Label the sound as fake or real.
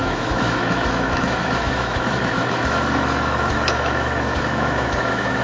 fake